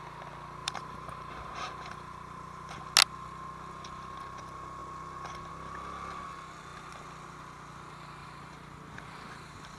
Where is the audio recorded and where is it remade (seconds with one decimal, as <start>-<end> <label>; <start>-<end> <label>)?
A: 0.0-0.6 recorded; 0.6-2.7 remade; 2.7-8.2 recorded; 8.2-9.8 remade